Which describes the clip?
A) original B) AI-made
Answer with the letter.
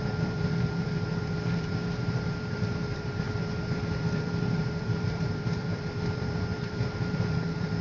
B